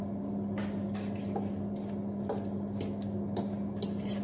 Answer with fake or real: real